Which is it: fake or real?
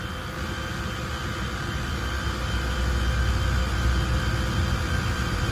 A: real